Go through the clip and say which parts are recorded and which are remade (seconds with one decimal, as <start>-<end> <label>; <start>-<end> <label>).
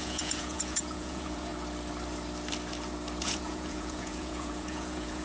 0.0-1.5 remade; 1.5-3.2 recorded; 3.2-5.2 remade